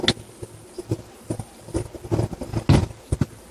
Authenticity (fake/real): real